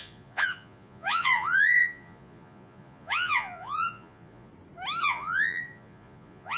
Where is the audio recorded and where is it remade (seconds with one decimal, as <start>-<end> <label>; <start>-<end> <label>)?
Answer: 0.0-4.5 remade; 4.5-5.0 recorded; 5.0-6.6 remade